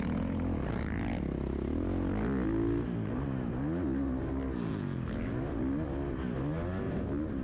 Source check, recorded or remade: recorded